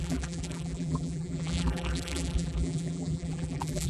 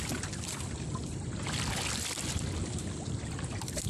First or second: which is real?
second